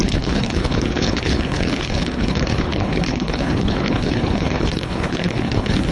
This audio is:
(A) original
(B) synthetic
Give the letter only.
B